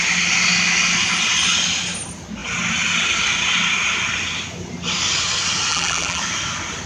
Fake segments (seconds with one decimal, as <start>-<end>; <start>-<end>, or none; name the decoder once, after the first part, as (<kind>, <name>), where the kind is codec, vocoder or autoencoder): 5.7-6.2 (vocoder, BigVGAN v2)